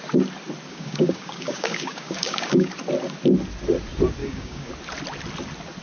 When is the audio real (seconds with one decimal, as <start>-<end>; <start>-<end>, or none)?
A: 0.0-0.7; 2.7-4.2; 4.7-5.8